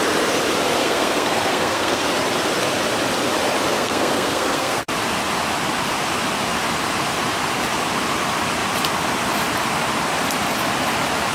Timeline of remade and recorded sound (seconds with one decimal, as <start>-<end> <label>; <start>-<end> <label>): 0.0-0.8 recorded; 0.8-2.0 remade; 2.0-3.7 recorded; 3.7-4.9 remade; 4.9-11.3 recorded